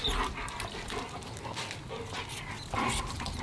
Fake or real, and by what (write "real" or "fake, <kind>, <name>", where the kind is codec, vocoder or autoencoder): real